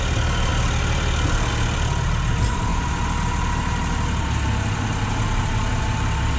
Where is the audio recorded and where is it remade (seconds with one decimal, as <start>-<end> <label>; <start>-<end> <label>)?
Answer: 0.0-6.4 recorded